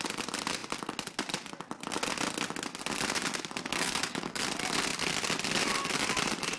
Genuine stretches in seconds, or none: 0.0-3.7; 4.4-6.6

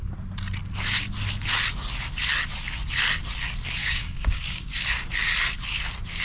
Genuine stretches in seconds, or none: 0.0-3.8; 5.1-6.2

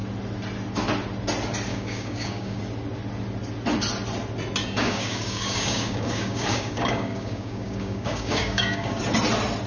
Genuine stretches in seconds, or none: 0.0-1.7; 2.6-4.6; 9.0-9.7

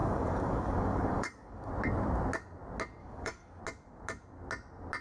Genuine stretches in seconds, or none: 1.7-3.0; 3.6-5.0

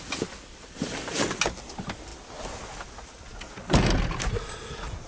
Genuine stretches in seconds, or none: 0.0-5.1

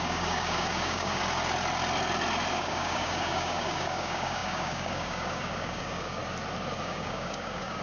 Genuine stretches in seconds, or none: 1.2-2.5; 6.2-6.8

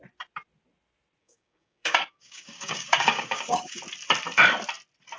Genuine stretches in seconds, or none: 0.0-1.2; 3.8-5.2